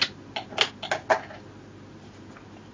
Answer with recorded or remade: recorded